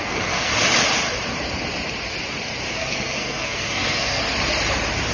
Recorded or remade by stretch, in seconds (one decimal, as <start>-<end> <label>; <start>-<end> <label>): 0.0-0.5 remade; 0.5-2.7 recorded; 2.7-4.2 remade; 4.2-5.1 recorded

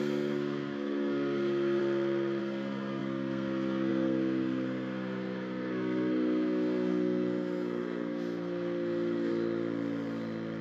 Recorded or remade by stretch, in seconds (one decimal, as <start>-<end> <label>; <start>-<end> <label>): 0.0-1.8 remade; 1.8-2.4 recorded; 2.4-9.3 remade; 9.3-10.6 recorded

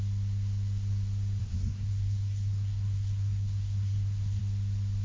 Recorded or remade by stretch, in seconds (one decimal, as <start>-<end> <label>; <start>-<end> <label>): 0.0-1.4 recorded; 1.4-4.4 remade; 4.4-5.0 recorded

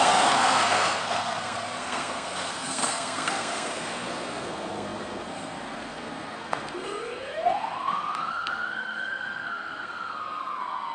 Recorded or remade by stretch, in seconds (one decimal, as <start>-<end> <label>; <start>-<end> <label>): 0.0-10.9 remade